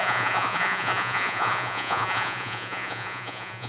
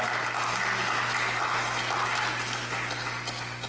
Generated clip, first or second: first